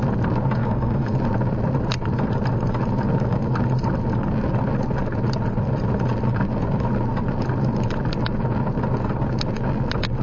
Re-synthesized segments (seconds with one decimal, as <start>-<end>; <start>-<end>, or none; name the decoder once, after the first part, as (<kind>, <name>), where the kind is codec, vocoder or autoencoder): 0.6-1.1 (codec, DAC)